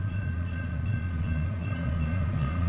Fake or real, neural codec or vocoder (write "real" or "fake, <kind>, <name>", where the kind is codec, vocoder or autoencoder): fake, vocoder, Vocos